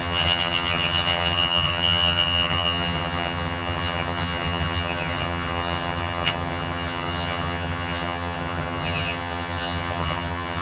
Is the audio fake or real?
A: fake